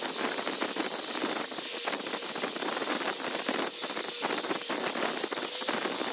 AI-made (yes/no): no